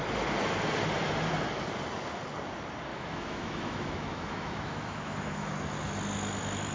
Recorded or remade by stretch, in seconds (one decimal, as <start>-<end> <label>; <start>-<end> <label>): 0.0-2.9 recorded; 2.9-5.5 remade; 5.5-6.7 recorded